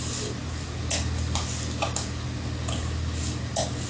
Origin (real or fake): real